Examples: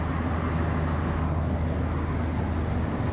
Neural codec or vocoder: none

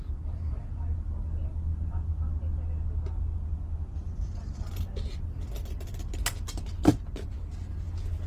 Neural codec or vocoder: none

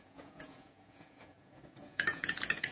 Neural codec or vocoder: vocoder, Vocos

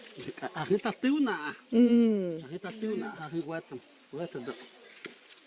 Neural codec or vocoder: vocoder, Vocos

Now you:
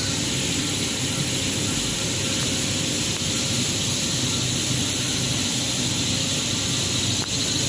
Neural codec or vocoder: none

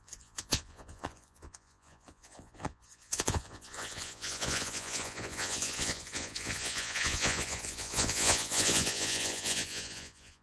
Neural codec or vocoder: vocoder, Vocos